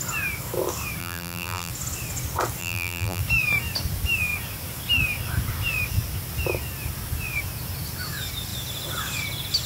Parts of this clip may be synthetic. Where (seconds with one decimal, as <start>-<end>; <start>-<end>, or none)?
1.0-1.7; 2.6-3.2